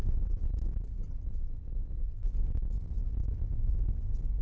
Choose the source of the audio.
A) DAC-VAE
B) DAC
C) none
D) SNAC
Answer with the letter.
C